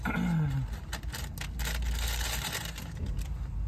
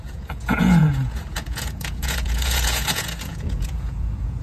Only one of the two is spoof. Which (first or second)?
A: second